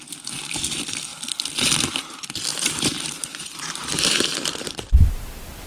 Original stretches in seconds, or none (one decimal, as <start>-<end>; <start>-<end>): 0.0-2.5